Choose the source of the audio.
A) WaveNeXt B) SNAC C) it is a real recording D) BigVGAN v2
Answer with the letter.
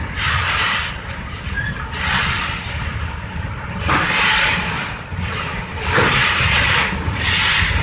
C